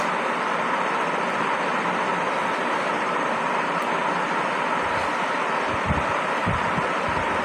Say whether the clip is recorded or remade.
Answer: recorded